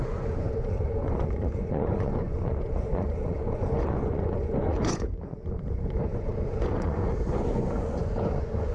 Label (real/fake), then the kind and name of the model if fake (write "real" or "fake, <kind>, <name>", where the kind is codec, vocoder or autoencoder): fake, vocoder, Vocos